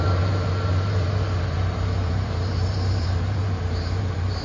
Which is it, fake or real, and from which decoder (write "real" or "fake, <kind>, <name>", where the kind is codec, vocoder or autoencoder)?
fake, vocoder, BigVGAN v2